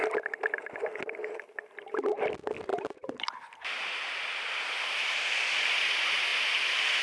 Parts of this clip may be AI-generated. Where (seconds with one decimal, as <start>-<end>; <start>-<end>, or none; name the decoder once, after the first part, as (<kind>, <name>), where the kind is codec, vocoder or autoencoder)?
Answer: 2.7-4.0 (vocoder, BigVGAN v2)

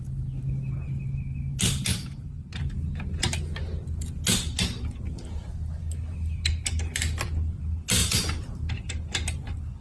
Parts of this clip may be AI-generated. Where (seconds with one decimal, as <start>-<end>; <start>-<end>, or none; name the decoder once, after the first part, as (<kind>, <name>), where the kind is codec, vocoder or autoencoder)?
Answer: 1.9-2.6 (vocoder, BigVGAN v2); 8.0-8.9

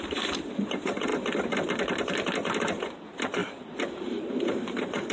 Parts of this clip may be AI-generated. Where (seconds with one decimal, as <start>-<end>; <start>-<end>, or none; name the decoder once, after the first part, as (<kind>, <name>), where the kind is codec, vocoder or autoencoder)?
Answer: 0.0-1.1 (vocoder, BigVGAN v2); 2.6-5.1

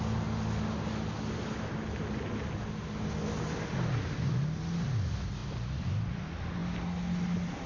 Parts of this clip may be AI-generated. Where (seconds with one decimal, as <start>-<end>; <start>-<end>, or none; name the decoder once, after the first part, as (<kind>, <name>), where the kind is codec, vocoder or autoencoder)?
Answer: 5.4-6.1 (vocoder, BigVGAN v2)

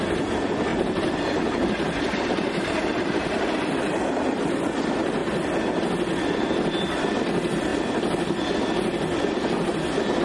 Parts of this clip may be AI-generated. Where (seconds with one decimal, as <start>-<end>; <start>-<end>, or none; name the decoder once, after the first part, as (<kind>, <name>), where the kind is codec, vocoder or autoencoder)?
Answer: 0.7-4.5 (vocoder, BigVGAN v2)

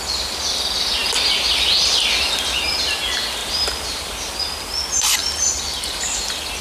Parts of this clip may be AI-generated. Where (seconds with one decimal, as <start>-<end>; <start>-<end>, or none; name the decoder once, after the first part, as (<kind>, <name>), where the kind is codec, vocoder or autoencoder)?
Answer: 3.4-4.4 (vocoder, BigVGAN v2)